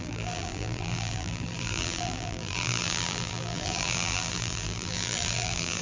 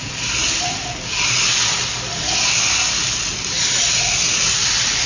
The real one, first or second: second